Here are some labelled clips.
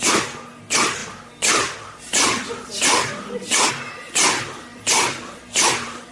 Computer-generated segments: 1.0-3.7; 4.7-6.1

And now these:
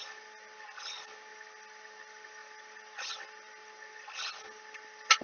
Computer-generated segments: none

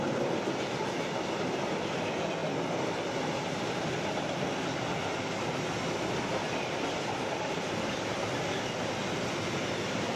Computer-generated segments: none